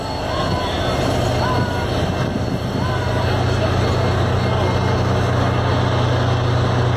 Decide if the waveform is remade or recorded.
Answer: recorded